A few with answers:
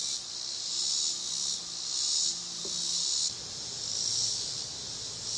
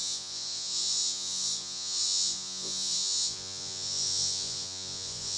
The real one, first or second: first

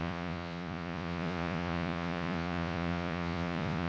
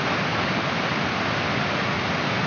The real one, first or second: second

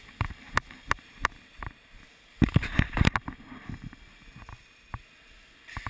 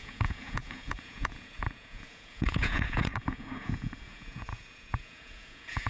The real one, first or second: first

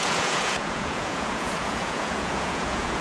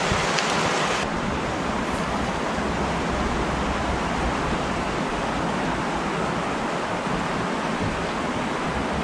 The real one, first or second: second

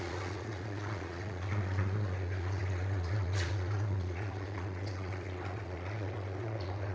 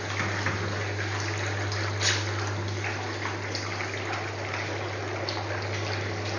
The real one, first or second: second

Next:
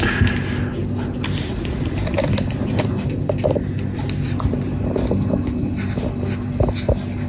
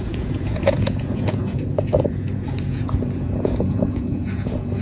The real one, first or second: first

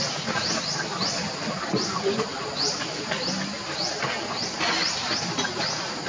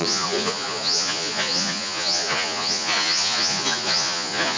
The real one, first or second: first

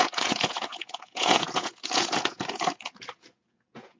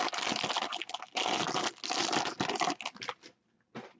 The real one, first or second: second